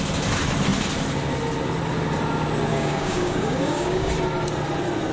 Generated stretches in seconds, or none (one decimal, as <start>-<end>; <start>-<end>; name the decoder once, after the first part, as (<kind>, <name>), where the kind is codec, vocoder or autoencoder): 2.7-4.1 (codec, DAC)